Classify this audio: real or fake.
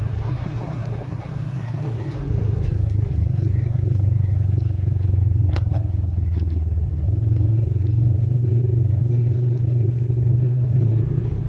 fake